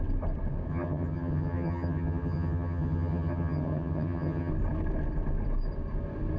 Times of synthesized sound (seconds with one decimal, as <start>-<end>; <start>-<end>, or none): 0.7-4.5